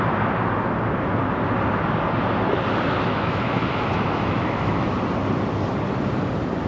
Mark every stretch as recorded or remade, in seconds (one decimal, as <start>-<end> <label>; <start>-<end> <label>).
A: 0.0-3.1 recorded; 3.1-4.9 remade; 4.9-6.7 recorded